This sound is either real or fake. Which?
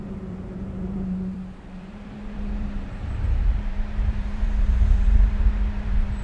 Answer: fake